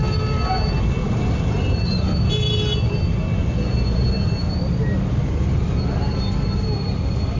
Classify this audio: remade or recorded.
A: recorded